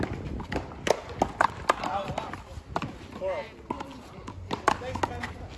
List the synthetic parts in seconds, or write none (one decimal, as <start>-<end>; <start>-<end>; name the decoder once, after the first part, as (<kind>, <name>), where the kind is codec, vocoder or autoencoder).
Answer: none